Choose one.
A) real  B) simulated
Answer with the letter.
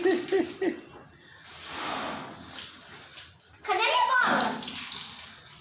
A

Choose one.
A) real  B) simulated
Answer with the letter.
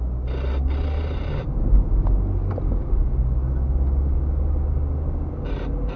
A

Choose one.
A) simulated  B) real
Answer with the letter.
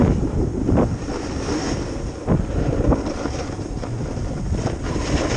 B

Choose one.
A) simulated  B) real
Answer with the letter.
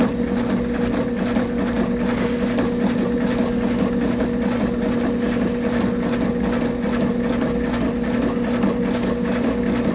B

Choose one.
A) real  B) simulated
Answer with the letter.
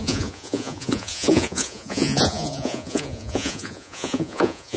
B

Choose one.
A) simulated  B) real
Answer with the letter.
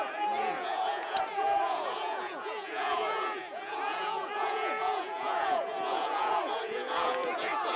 A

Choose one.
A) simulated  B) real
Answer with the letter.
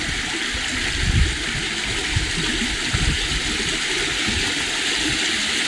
B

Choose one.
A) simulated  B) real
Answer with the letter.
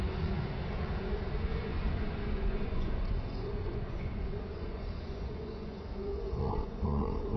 A